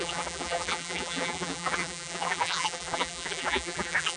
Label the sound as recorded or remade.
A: remade